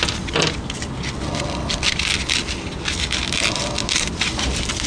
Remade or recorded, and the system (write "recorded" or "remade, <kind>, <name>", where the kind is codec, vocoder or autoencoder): recorded